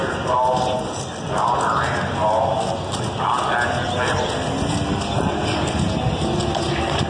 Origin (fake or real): real